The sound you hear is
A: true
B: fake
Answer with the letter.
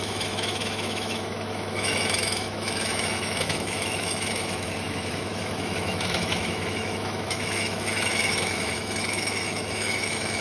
B